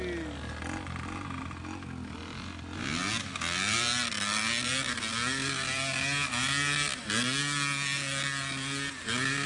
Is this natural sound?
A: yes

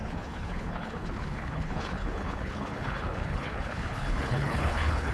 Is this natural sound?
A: no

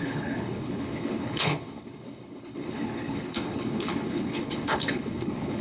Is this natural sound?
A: no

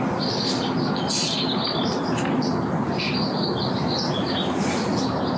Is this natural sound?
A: yes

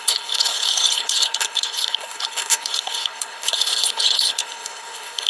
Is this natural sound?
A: no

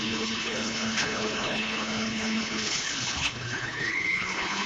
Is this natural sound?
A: no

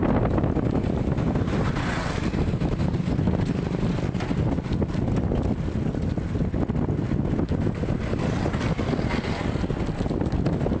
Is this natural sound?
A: yes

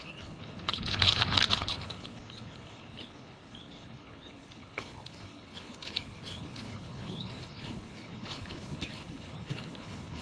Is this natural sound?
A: no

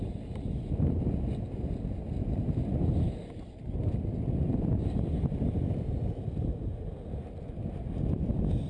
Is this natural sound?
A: yes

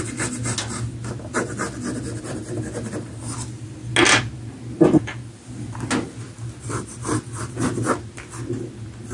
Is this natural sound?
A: yes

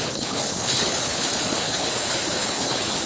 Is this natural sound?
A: no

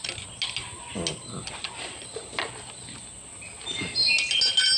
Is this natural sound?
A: yes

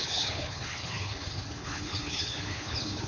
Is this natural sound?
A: no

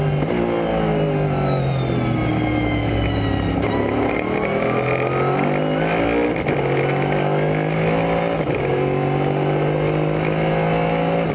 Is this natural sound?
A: yes